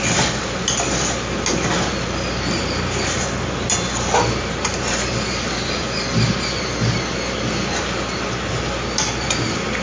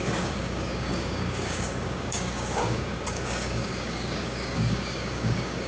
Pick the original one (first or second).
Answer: first